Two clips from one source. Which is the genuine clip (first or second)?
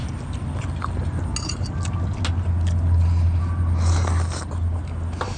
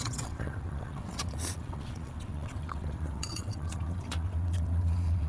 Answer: first